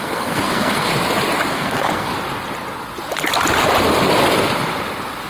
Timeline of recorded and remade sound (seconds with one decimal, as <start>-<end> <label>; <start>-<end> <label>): 0.0-0.9 remade; 0.9-1.5 recorded; 1.5-2.1 remade; 2.1-5.3 recorded

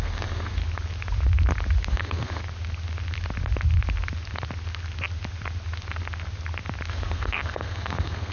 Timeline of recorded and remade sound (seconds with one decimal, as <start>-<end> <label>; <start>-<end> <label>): 0.0-0.6 remade; 0.6-1.9 recorded; 1.9-2.4 remade; 2.4-6.9 recorded; 6.9-8.3 remade

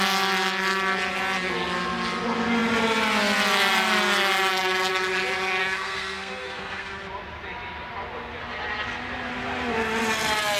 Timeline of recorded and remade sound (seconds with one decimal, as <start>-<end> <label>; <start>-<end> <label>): 0.0-5.6 recorded; 5.6-6.9 remade; 6.9-10.6 recorded